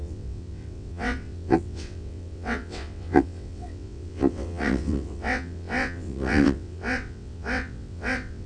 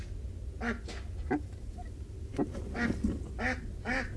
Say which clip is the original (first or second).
second